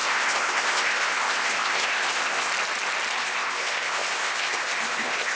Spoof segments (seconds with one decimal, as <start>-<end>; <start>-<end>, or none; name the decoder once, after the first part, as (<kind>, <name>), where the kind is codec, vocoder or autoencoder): 0.0-2.5 (codec, ZipCodec); 3.2-5.4